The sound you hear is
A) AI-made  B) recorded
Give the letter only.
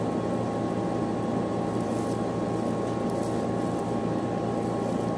B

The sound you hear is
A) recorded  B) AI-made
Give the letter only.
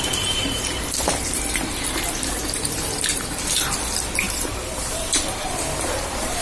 B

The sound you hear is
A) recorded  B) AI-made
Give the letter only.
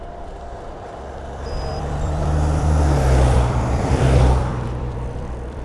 B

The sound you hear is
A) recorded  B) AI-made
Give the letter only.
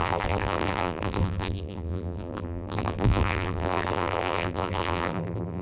B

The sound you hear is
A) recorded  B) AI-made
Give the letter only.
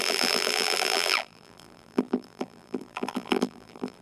B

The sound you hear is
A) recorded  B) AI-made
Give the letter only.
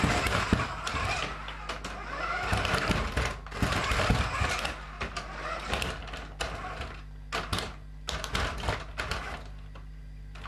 A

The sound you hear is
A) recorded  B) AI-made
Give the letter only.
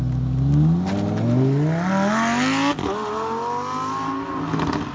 A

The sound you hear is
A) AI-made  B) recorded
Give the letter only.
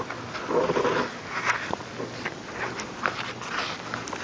B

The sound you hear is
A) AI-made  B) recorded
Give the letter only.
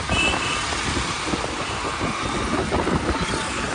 B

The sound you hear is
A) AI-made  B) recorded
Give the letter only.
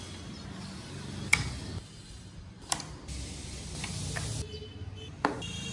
B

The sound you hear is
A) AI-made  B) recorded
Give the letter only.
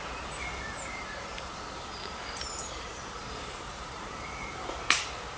A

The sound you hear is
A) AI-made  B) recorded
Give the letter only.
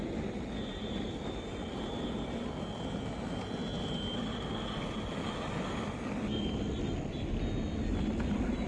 B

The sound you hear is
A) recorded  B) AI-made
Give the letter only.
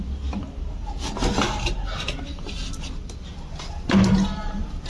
A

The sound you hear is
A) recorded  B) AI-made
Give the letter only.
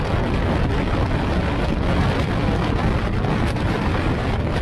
A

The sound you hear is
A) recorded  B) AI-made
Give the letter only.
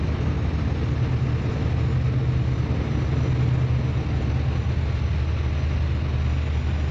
A